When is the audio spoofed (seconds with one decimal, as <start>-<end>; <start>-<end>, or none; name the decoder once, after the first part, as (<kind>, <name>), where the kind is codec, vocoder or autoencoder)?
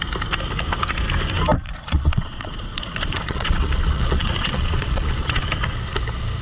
1.6-5.4 (vocoder, Vocos)